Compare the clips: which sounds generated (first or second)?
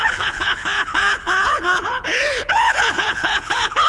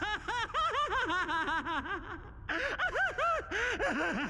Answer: first